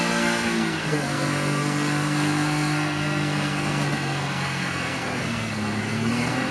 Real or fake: fake